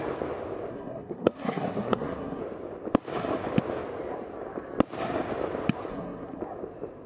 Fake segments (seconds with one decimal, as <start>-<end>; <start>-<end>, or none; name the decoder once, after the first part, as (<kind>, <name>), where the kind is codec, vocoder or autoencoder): 0.7-2.4 (codec, SNAC); 5.9-6.4